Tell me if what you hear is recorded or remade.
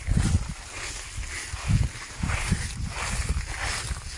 recorded